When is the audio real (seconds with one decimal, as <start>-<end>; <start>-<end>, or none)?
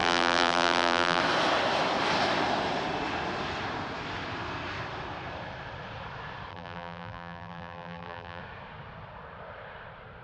1.2-6.5; 8.4-10.2